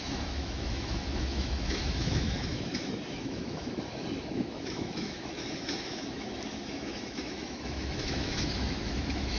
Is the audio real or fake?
fake